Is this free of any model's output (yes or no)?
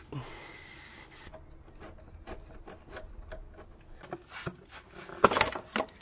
yes